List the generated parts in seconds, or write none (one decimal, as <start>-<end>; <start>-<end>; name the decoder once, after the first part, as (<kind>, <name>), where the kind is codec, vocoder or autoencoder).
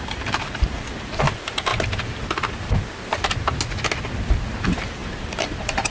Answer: 0.0-1.7 (vocoder, BigVGAN v2); 4.6-5.9